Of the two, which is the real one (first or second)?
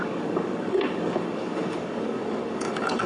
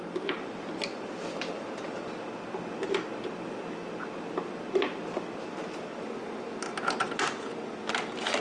second